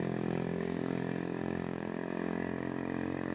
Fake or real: fake